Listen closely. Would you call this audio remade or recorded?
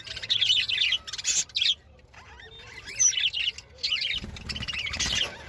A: recorded